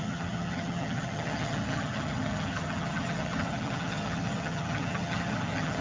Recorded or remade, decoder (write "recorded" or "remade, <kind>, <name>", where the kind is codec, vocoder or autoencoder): remade, vocoder, HiFi-GAN